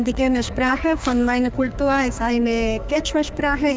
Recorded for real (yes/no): no